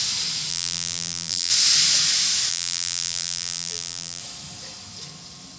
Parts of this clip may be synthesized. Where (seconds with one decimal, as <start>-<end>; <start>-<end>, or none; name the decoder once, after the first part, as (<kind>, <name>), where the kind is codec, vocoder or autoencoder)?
0.5-1.5 (vocoder, BigVGAN v2); 2.5-4.2